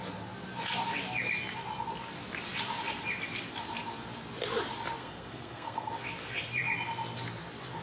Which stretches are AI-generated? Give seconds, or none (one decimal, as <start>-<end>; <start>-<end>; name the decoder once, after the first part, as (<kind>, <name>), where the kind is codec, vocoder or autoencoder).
5.0-5.9 (codec, SNAC)